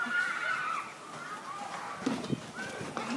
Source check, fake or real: real